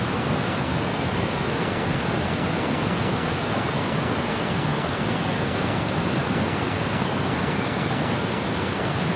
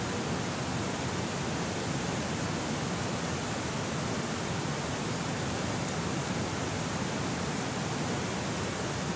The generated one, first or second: first